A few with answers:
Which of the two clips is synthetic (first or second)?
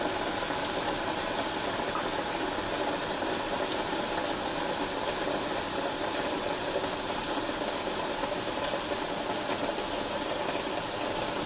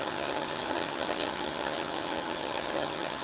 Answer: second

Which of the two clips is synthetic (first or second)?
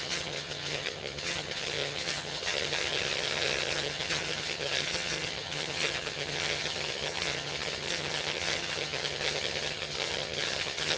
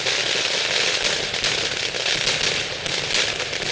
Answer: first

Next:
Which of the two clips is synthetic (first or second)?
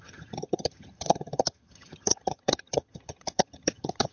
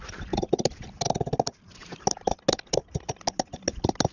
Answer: first